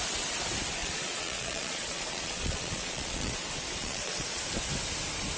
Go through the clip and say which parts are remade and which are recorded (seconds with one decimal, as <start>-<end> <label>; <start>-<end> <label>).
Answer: 0.0-0.8 recorded; 0.8-3.3 remade; 3.3-3.8 recorded; 3.8-4.4 remade; 4.4-5.4 recorded